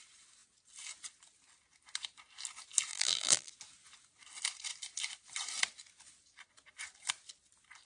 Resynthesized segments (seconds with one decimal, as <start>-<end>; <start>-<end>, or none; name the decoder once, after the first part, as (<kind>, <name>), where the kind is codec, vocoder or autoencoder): 2.9-3.5 (vocoder, BigVGAN v2)